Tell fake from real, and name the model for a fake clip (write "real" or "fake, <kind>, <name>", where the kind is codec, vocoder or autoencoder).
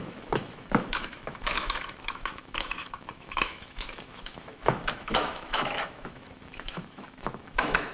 fake, autoencoder, DAC-VAE